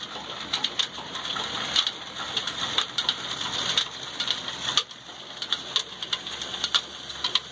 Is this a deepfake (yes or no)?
no